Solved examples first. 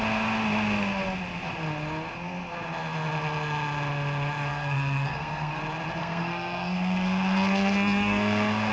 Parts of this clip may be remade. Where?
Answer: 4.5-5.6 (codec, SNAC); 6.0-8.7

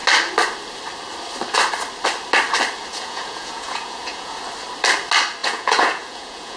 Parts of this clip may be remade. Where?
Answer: 2.9-4.4 (vocoder, Vocos); 5.4-6.6

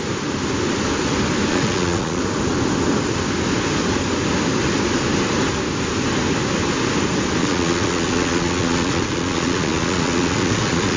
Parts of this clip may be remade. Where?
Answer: 1.5-2.2 (vocoder, Vocos); 7.4-11.0

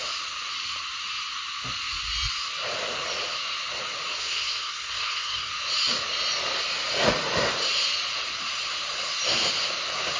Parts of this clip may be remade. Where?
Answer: 4.1-5.5 (codec, SNAC)

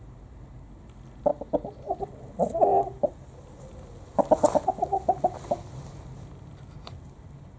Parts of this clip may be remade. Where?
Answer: none

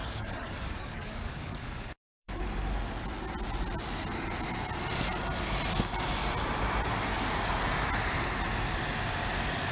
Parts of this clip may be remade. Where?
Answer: 0.0-2.4 (codec, DAC)